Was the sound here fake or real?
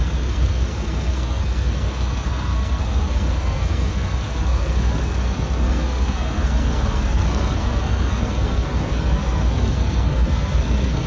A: fake